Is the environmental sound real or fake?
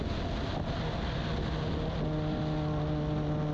real